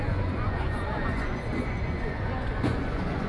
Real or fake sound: fake